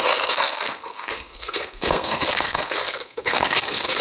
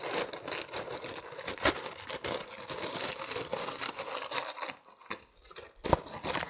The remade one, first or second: first